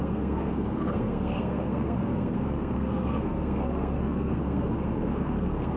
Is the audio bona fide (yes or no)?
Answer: no